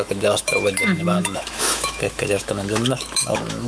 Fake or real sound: fake